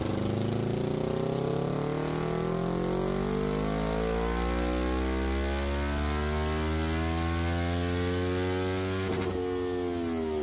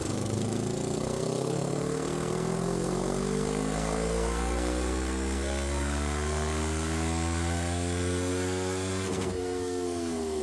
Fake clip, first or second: second